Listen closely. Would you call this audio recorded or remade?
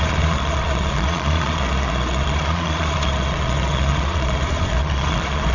remade